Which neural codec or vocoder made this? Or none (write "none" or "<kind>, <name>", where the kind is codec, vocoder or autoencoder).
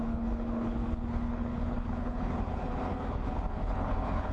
codec, HILCodec